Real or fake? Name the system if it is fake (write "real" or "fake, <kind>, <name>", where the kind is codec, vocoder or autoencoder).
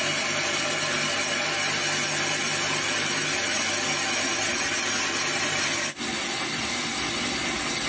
real